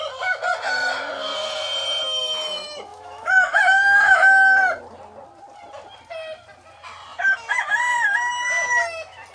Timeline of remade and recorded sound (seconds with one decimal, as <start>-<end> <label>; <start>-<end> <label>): 0.0-2.9 recorded; 2.9-4.2 remade; 4.2-9.3 recorded